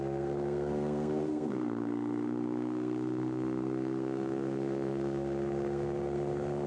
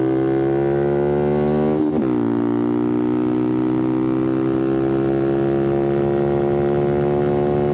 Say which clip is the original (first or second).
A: second